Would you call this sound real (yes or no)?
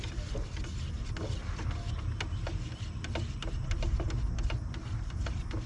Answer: yes